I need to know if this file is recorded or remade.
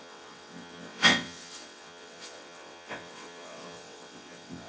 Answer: remade